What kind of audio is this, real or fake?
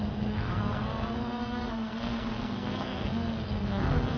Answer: fake